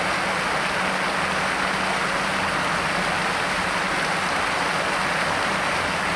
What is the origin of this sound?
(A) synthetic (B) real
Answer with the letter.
B